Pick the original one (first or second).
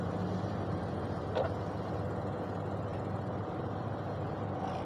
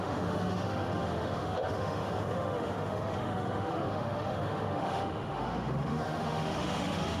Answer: first